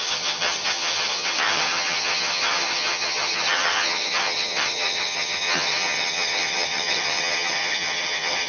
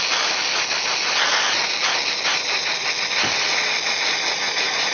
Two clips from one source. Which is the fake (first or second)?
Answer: first